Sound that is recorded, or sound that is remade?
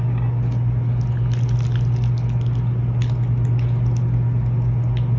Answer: recorded